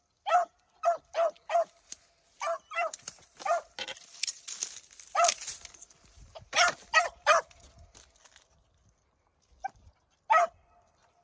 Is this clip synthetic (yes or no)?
no